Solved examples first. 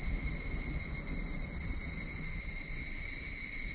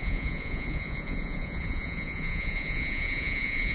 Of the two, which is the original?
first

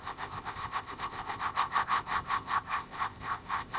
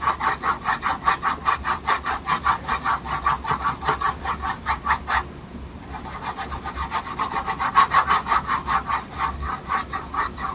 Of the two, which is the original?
second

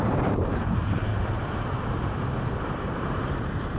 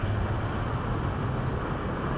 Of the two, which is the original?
second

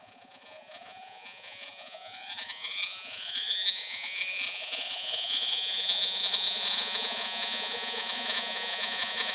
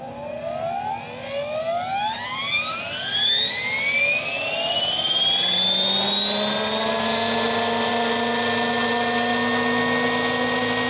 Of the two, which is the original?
second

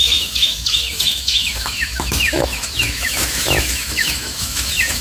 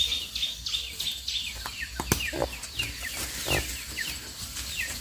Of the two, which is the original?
second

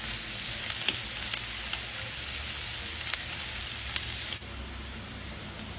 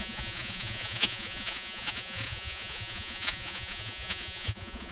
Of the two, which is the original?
first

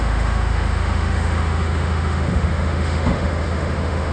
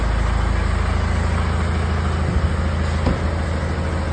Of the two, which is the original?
second